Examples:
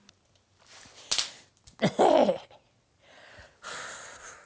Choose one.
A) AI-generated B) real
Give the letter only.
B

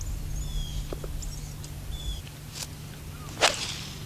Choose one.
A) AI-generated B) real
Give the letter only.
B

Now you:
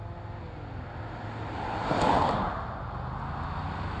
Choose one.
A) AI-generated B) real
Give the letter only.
B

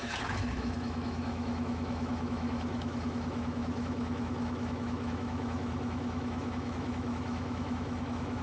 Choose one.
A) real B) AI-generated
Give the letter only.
B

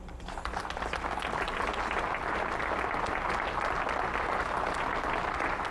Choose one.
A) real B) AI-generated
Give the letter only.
A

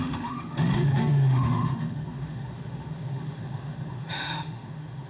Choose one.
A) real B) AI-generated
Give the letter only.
B